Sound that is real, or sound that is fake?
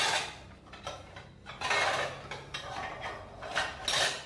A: real